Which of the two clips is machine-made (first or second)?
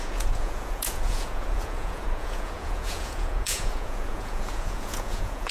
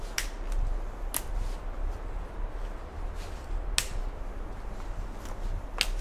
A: first